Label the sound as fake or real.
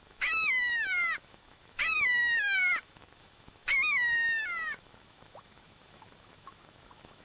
fake